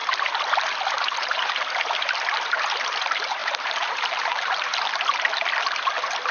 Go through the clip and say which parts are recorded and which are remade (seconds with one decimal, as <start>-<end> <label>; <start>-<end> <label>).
0.0-4.7 remade; 4.7-6.3 recorded